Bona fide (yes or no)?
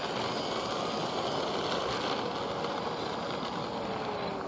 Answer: yes